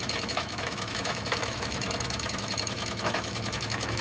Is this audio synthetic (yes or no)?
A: yes